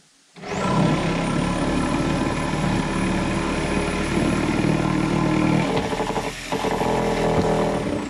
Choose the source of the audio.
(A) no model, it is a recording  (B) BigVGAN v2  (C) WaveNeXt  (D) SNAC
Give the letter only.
A